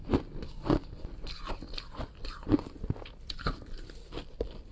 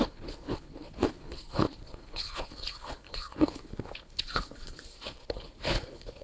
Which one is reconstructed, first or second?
second